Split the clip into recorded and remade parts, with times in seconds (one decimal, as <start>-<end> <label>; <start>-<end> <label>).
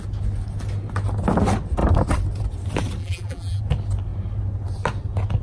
0.0-3.0 recorded; 3.0-3.6 remade; 3.6-5.4 recorded